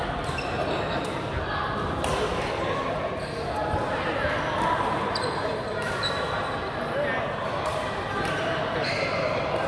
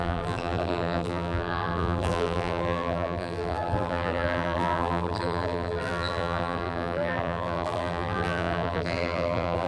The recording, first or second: first